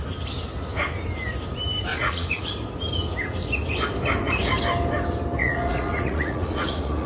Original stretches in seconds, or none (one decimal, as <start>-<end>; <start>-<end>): 0.0-1.9; 2.5-5.4